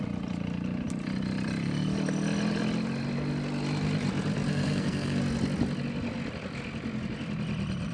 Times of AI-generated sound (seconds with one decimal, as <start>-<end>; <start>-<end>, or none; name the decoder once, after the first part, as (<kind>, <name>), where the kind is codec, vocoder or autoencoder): 4.5-5.2 (codec, SNAC)